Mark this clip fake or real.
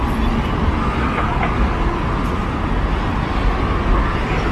real